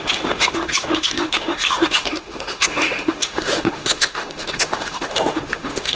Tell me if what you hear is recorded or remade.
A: remade